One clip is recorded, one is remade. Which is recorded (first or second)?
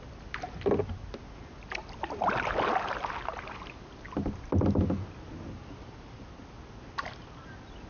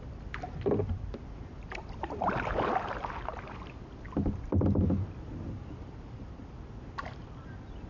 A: first